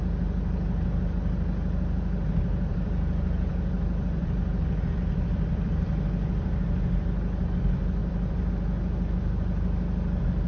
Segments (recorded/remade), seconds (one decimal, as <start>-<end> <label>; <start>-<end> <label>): 0.0-2.7 recorded; 2.7-6.5 remade; 6.5-8.0 recorded; 8.0-8.5 remade; 8.5-10.5 recorded